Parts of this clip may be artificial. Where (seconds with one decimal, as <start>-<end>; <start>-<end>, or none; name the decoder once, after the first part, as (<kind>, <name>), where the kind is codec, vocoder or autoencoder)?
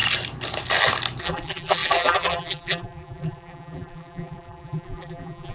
1.2-5.5 (vocoder, BigVGAN v2)